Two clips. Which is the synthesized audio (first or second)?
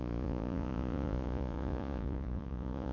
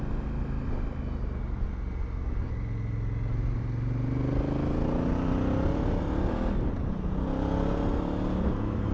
first